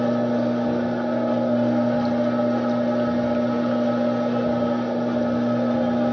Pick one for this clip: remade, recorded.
recorded